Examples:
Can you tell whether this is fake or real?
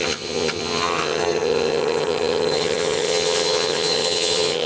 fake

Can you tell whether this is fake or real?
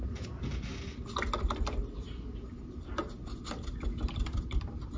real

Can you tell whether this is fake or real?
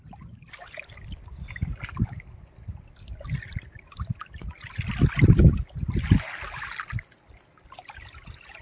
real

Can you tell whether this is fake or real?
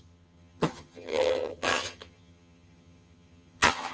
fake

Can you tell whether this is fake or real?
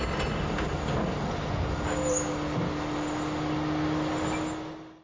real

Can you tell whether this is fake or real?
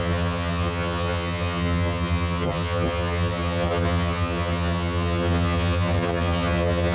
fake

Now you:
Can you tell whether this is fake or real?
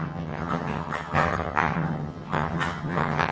fake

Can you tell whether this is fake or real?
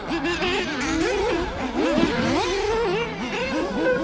real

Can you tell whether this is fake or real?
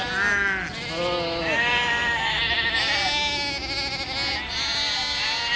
real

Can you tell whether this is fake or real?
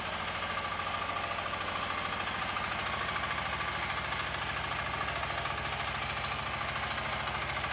real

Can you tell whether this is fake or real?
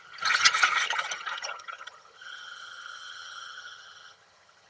fake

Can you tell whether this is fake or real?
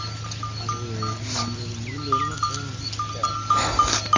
real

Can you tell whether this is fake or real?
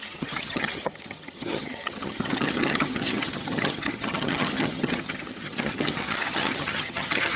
fake